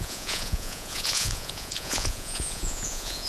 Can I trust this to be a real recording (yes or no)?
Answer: no